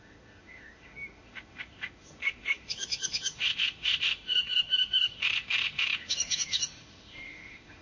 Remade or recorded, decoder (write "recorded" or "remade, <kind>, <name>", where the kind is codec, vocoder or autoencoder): remade, autoencoder, DAC-VAE